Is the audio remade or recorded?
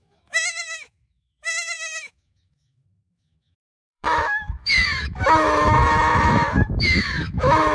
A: remade